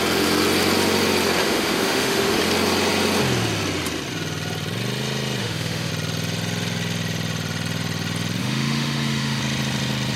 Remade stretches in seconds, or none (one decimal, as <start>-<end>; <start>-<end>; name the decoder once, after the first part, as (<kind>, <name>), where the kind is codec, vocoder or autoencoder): 1.4-2.4 (autoencoder, DAC-VAE); 5.4-5.9; 8.4-9.4